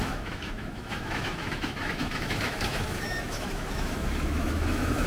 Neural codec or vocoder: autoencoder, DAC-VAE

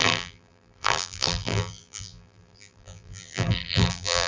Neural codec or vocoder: vocoder, BigVGAN v2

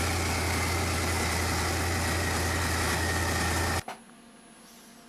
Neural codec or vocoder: none